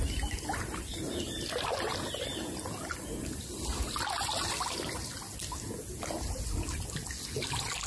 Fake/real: real